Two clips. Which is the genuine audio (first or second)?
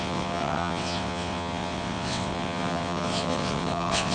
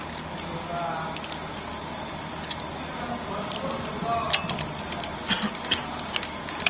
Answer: second